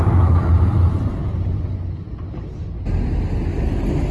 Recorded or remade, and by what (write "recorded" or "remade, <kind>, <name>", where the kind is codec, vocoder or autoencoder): recorded